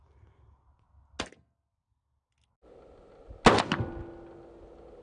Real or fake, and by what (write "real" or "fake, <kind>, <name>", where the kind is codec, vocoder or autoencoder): real